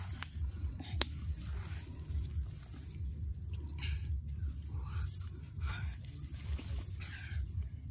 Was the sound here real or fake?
real